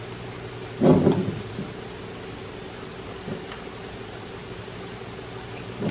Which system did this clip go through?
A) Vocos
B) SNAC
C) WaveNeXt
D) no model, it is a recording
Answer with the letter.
D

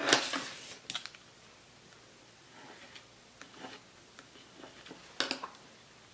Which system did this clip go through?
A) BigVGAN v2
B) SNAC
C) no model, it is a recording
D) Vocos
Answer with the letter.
C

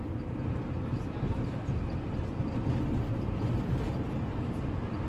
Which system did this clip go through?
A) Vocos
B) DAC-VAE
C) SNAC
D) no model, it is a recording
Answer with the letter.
D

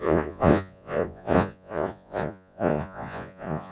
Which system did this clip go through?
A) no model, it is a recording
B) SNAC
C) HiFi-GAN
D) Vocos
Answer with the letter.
D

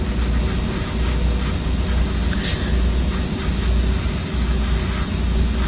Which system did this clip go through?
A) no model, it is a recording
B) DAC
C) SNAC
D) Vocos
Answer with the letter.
A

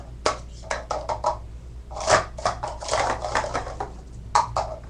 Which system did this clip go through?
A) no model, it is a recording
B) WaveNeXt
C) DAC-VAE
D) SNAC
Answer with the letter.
A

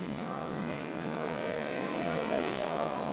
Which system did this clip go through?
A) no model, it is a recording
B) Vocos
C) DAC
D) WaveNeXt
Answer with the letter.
D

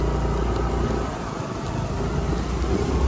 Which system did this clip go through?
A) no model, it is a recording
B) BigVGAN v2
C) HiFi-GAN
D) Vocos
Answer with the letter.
A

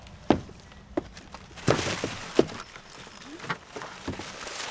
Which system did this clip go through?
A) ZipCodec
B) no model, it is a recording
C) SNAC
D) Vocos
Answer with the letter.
B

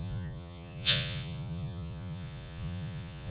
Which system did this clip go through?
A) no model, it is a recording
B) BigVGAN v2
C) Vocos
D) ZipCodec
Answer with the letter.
C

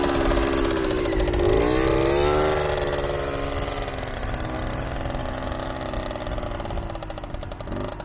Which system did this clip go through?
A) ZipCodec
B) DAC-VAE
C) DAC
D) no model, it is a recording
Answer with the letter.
D